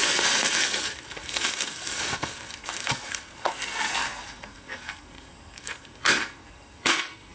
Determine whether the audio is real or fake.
fake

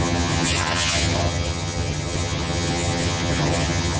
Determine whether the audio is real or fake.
fake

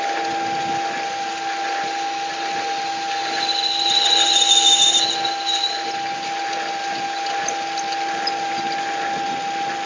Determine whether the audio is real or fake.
real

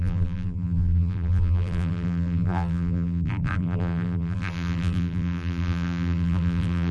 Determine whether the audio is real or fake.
fake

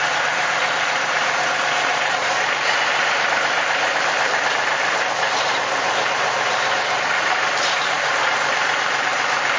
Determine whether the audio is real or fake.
fake